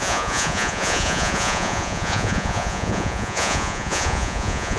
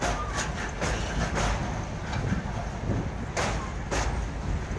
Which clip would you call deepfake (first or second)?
first